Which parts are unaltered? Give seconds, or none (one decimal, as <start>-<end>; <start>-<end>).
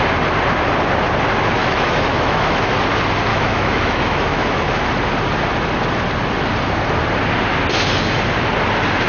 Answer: 0.0-1.6; 2.7-3.3; 4.9-9.1